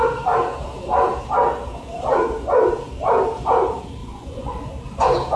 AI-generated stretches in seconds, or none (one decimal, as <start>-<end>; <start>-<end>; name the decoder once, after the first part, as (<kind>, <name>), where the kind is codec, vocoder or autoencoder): 4.0-4.7 (vocoder, Vocos)